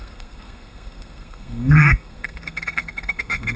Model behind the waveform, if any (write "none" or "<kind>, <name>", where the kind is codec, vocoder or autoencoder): codec, SNAC